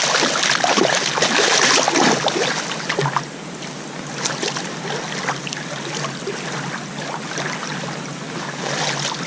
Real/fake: real